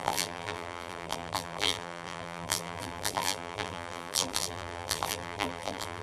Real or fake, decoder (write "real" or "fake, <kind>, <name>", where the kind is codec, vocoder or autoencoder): fake, vocoder, BigVGAN v2